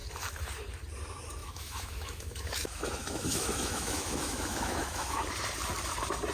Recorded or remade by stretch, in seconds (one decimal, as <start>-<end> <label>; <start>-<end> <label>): 0.0-1.4 recorded; 1.4-5.2 remade; 5.2-6.3 recorded